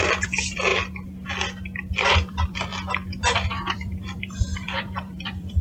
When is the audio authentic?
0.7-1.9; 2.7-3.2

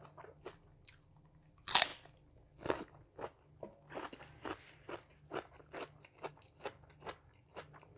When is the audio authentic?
0.0-8.0

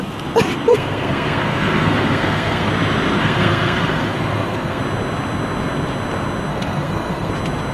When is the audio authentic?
0.0-0.7; 2.7-3.2; 4.8-6.5; 7.3-7.7

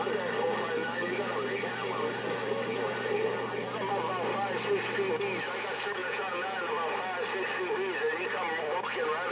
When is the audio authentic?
0.0-6.0; 6.7-9.3

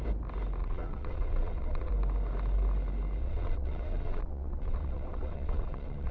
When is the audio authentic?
0.0-0.6; 1.9-3.2

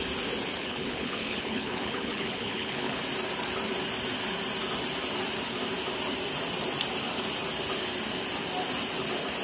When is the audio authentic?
0.0-0.6; 3.0-9.4